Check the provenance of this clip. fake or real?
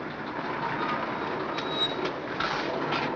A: real